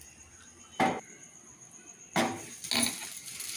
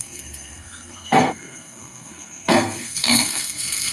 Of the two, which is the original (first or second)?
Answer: first